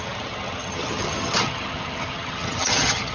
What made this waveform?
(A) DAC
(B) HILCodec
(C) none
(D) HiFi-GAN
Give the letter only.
D